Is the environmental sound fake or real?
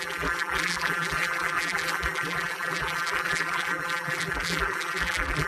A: fake